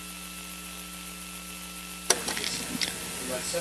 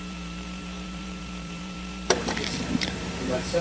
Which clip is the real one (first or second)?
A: first